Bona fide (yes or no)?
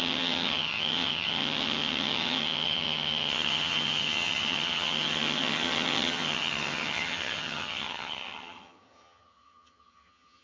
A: no